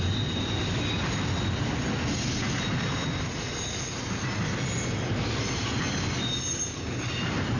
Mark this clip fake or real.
real